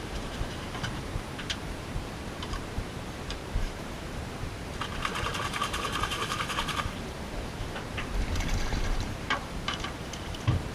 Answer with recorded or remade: remade